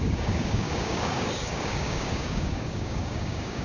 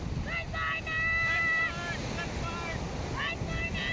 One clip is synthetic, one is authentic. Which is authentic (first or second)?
second